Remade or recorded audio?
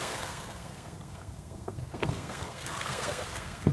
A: remade